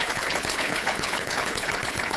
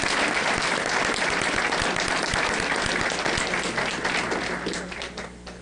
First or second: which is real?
second